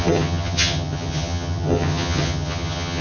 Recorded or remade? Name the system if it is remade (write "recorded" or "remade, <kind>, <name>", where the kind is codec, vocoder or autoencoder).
remade, vocoder, HiFi-GAN